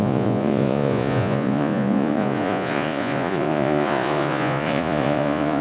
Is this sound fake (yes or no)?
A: yes